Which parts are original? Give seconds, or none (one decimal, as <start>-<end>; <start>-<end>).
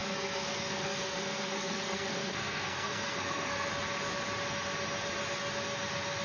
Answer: 3.7-6.2